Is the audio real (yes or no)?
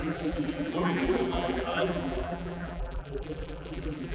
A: no